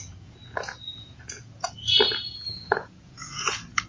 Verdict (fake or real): fake